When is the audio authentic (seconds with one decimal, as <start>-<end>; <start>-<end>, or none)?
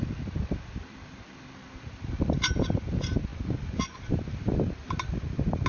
0.0-5.7